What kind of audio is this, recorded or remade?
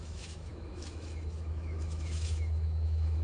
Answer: remade